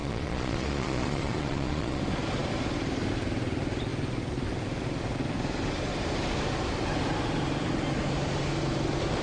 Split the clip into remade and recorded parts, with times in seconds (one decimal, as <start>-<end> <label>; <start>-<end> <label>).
0.0-2.0 remade; 2.0-9.2 recorded